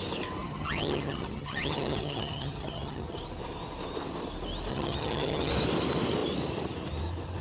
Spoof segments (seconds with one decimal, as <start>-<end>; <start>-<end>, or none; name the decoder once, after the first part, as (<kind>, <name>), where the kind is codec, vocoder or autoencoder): 0.4-3.2 (vocoder, HiFi-GAN); 4.7-5.5